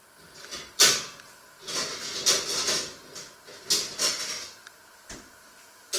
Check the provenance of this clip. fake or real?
fake